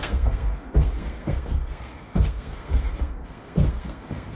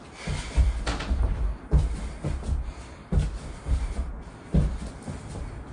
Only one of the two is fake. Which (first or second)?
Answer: first